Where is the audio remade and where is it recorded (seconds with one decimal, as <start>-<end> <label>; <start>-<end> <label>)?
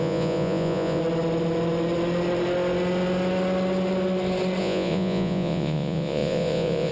0.0-1.0 remade; 1.0-4.6 recorded; 4.6-6.9 remade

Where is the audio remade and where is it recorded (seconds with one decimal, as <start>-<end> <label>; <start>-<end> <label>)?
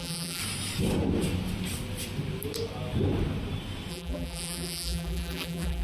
0.0-0.4 remade; 0.4-3.9 recorded; 3.9-5.8 remade